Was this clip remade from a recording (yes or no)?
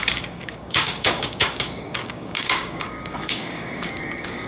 yes